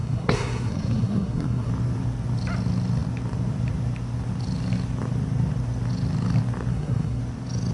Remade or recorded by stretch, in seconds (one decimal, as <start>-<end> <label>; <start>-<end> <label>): 0.0-1.7 remade; 1.7-6.7 recorded; 6.7-7.2 remade; 7.2-7.7 recorded